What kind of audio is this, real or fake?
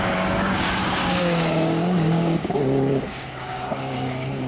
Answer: fake